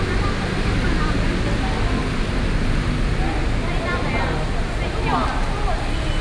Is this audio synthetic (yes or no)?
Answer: no